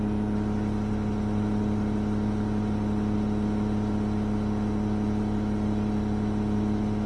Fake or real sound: real